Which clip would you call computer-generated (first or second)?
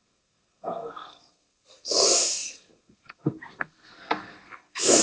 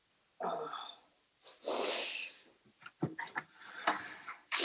first